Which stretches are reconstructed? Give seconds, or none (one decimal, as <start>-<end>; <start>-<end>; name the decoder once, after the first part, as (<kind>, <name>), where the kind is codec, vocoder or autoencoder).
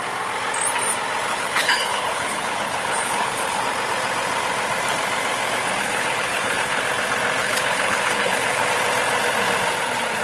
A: 1.3-3.6 (codec, HILCodec); 5.8-6.8; 7.4-8.7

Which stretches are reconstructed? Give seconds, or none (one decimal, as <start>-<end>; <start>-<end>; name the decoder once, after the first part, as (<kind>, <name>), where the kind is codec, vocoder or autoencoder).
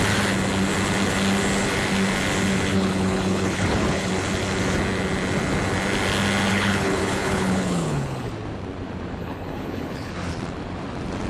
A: 2.7-4.1 (codec, HILCodec); 6.5-8.3; 9.2-10.1